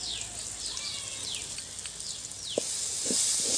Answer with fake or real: real